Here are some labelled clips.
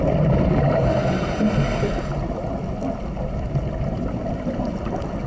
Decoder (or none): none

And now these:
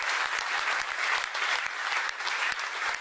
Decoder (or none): none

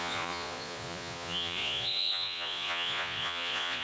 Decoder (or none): vocoder, Vocos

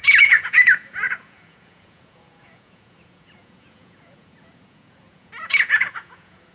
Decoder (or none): vocoder, Vocos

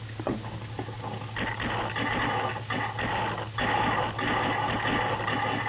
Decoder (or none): none